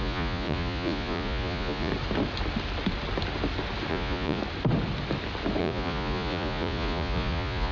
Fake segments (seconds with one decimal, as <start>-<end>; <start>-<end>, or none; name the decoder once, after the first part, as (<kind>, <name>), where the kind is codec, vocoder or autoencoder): 0.0-1.9 (vocoder, Vocos); 3.9-4.4; 5.6-7.7